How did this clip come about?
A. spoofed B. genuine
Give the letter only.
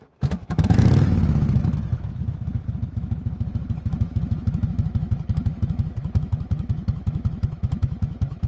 A